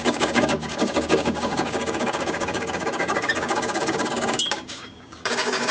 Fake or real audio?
fake